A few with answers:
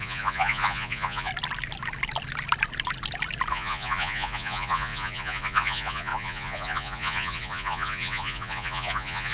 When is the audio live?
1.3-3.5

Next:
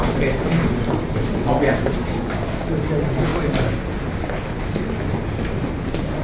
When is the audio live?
0.0-6.2

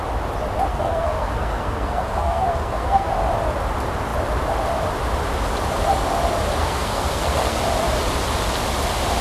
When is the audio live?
0.0-0.7; 3.1-6.6; 7.6-9.2